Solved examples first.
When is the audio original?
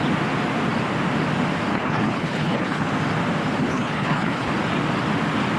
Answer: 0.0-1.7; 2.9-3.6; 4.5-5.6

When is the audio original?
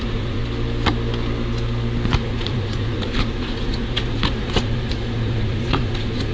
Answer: 0.4-2.1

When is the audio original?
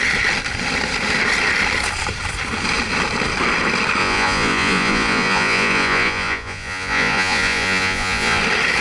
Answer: 0.0-4.0; 8.4-8.8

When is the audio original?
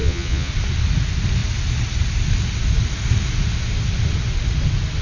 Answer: 0.5-5.0